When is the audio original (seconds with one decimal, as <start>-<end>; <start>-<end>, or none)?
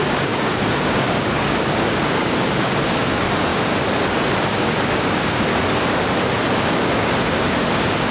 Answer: 5.5-6.6